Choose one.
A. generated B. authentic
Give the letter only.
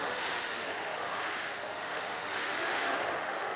A